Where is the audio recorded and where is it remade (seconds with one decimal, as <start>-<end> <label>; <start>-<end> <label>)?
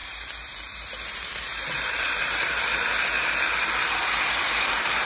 0.0-2.9 remade; 2.9-3.8 recorded; 3.8-5.0 remade